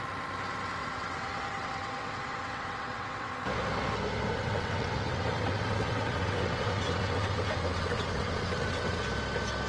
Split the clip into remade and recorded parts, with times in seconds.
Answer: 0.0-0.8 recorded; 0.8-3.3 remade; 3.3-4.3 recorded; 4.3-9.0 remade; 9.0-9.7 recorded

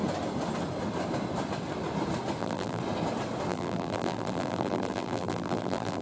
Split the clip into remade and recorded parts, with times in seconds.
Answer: 0.0-2.4 recorded; 2.4-2.8 remade; 2.8-3.5 recorded; 3.5-6.0 remade

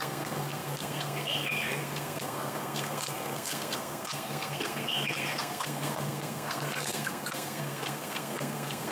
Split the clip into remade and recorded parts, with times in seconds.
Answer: 0.0-8.9 remade